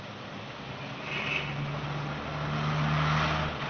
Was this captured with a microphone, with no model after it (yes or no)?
yes